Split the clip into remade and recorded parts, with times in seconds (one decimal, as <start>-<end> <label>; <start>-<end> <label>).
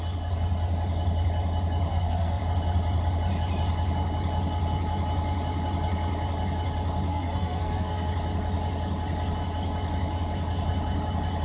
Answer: 0.0-1.9 recorded; 1.9-2.4 remade; 2.4-7.1 recorded; 7.1-8.1 remade; 8.1-11.4 recorded